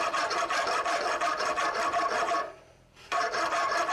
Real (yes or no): yes